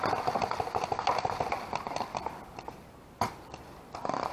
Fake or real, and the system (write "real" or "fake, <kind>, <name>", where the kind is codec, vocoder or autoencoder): real